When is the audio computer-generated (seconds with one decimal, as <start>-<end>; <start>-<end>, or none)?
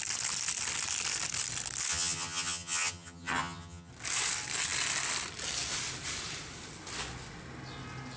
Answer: 1.9-3.9